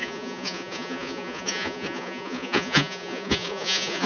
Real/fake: fake